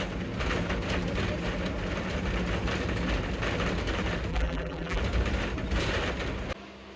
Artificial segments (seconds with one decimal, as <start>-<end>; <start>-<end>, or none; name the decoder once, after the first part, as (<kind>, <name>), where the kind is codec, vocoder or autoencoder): 4.3-5.0 (vocoder, BigVGAN v2)